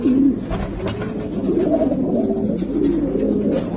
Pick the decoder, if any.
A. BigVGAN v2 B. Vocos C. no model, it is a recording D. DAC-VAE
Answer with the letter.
C